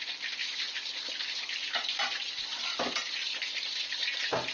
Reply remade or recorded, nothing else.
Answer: recorded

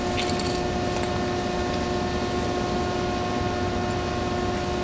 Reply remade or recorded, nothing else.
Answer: recorded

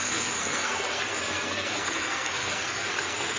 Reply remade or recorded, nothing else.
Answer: remade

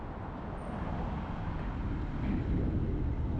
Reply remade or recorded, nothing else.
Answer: recorded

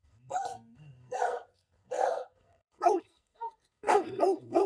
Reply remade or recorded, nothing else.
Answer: remade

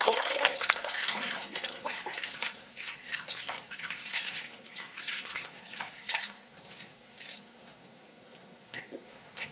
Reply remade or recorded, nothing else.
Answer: remade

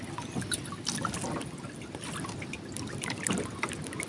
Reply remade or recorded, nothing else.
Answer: recorded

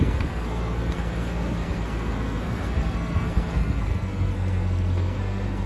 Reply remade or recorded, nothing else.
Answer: remade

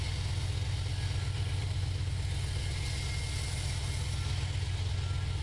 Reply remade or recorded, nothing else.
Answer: recorded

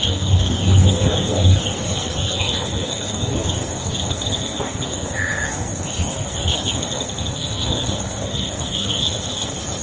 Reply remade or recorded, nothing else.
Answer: remade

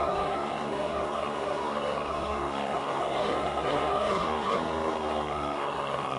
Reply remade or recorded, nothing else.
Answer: remade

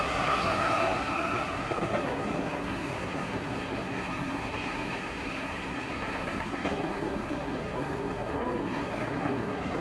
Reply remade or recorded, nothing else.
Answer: remade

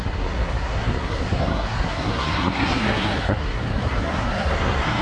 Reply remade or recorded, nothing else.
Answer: remade